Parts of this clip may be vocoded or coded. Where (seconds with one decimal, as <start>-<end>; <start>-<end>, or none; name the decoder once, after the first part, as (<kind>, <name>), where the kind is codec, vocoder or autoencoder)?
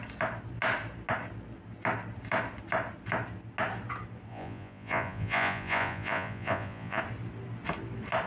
4.3-7.0 (vocoder, Vocos)